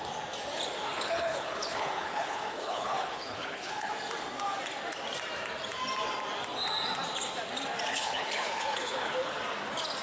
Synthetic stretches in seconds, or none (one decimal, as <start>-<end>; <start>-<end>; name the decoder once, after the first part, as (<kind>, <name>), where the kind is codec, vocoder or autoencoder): 0.8-3.9 (codec, HILCodec); 7.9-9.4